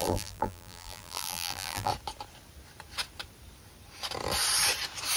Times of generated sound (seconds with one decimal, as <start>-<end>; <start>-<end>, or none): 0.0-1.9